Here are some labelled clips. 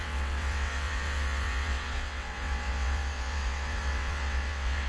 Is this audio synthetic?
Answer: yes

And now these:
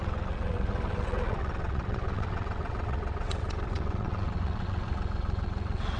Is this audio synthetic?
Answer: yes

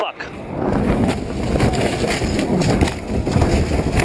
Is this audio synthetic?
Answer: no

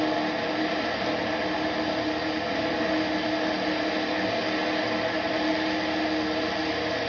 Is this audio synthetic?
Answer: no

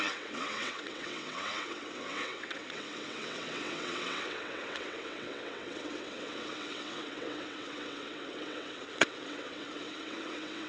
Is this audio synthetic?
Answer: yes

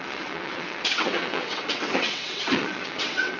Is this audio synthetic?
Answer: yes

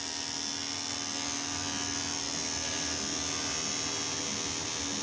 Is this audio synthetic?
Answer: no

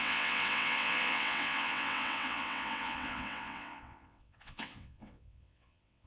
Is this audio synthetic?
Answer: yes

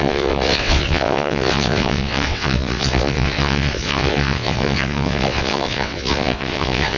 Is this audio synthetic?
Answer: yes